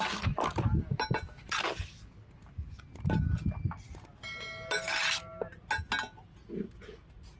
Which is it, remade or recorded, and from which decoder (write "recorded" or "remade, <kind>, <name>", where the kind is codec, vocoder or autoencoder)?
recorded